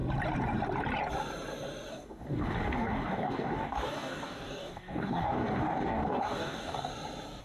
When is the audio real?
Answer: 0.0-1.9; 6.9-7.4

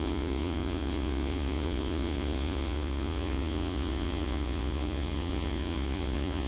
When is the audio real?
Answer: none

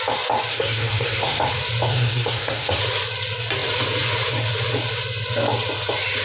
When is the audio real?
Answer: 0.0-0.5; 1.4-1.9; 2.8-6.2

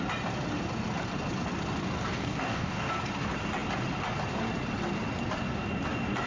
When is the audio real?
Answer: 0.0-2.1; 2.9-6.3